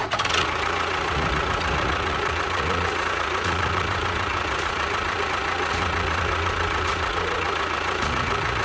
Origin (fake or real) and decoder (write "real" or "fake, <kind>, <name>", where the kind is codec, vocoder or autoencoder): fake, vocoder, Vocos